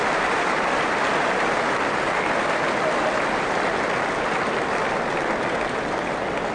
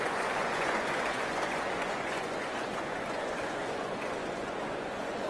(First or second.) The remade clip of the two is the second